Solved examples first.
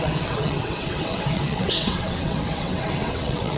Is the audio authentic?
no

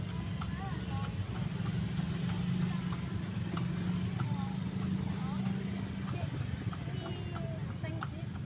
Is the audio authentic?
yes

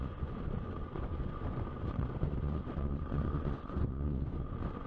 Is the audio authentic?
no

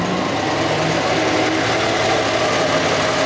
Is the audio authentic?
yes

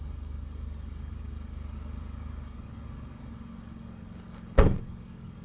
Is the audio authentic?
no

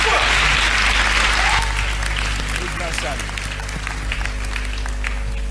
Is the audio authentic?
yes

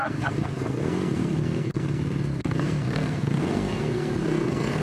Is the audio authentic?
no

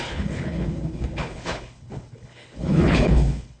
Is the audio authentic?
no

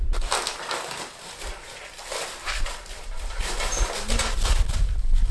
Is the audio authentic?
yes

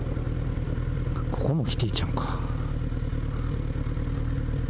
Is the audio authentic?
yes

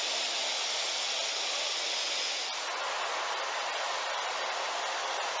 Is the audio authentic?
yes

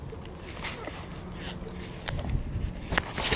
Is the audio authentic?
yes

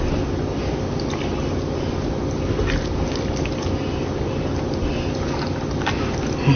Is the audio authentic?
yes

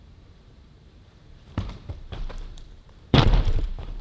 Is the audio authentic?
no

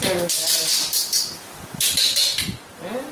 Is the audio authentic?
yes